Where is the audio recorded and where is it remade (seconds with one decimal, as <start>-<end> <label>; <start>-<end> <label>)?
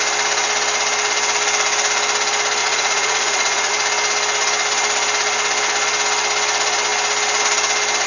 0.0-2.6 recorded; 2.6-3.7 remade; 3.7-8.1 recorded